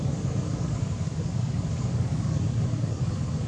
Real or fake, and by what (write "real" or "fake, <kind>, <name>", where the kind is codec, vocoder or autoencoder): fake, codec, DAC